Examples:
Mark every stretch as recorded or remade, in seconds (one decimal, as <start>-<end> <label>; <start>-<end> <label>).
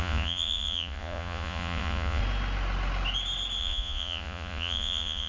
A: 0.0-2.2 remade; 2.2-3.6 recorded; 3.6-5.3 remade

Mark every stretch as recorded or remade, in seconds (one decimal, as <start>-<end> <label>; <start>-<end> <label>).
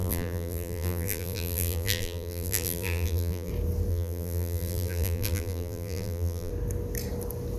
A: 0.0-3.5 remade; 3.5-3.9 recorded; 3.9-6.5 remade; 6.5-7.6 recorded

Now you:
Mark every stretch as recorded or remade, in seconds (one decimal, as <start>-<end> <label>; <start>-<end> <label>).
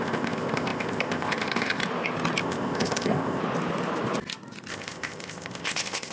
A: 0.0-1.8 remade; 1.8-2.4 recorded; 2.4-3.4 remade; 3.4-4.7 recorded; 4.7-6.1 remade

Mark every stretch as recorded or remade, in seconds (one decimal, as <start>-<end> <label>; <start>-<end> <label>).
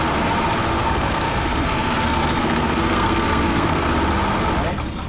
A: 0.0-0.8 recorded; 0.8-3.9 remade; 3.9-5.1 recorded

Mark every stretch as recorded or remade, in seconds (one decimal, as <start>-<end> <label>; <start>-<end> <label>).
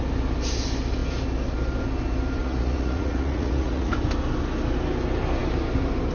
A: 0.0-2.4 recorded; 2.4-3.9 remade; 3.9-6.1 recorded